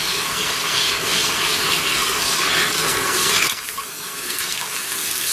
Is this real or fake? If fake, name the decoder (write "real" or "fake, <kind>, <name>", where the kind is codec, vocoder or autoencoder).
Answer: fake, codec, SNAC